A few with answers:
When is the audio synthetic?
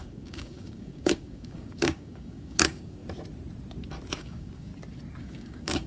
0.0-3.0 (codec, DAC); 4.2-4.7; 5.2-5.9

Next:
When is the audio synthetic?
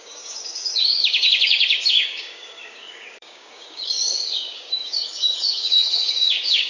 0.0-6.7 (codec, DAC)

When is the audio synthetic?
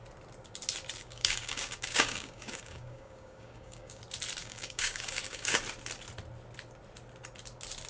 1.0-4.0 (codec, DAC); 4.4-5.6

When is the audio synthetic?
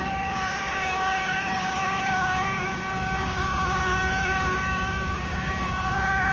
0.0-6.3 (codec, DAC)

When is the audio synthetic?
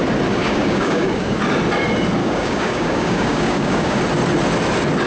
0.4-1.4 (codec, DAC); 2.2-4.0